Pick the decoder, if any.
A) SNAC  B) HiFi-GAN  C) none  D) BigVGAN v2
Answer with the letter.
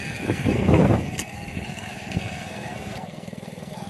A